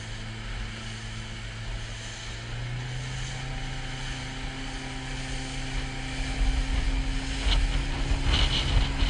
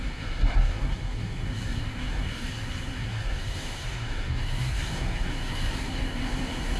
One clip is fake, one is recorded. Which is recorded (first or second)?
first